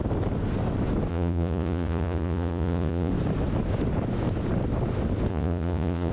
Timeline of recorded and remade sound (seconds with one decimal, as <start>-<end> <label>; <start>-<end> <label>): 0.0-1.1 recorded; 1.1-3.1 remade; 3.1-5.3 recorded; 5.3-6.1 remade